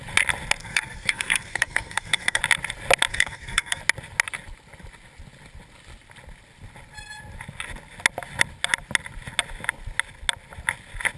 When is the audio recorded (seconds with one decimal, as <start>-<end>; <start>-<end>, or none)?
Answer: 0.0-0.6; 2.4-3.1; 3.8-11.2